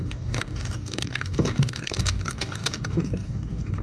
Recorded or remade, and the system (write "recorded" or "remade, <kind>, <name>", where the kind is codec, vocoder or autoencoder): remade, codec, DAC